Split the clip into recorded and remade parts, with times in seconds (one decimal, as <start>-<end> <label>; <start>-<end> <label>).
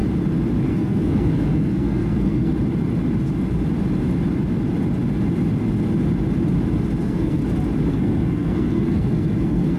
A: 0.0-0.7 recorded; 0.7-2.5 remade; 2.5-7.0 recorded; 7.0-7.4 remade; 7.4-7.9 recorded; 7.9-9.8 remade